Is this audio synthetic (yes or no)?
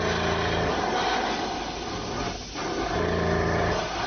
no